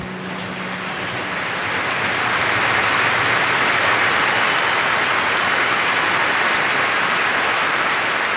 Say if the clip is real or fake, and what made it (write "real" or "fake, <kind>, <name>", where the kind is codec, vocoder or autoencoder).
real